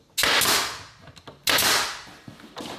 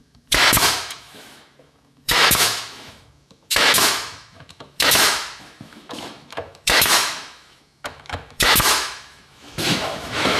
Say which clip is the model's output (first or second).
second